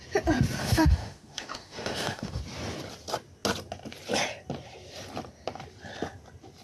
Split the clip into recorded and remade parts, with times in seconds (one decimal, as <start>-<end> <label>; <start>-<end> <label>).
0.0-0.6 recorded; 0.6-2.4 remade; 2.4-6.6 recorded